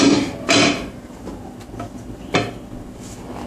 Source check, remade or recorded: recorded